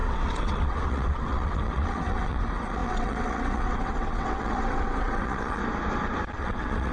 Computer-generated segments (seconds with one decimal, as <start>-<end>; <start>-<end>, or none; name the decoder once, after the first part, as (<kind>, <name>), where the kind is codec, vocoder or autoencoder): 0.0-5.6 (vocoder, WaveNeXt); 6.4-6.9